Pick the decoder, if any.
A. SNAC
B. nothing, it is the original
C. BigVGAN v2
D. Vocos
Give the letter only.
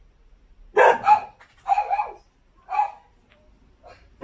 B